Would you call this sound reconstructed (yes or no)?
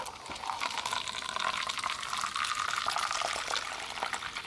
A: no